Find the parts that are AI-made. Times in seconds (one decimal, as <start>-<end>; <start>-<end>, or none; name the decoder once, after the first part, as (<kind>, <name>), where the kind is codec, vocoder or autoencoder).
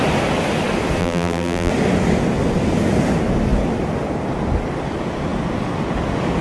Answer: 1.0-1.7 (vocoder, BigVGAN v2)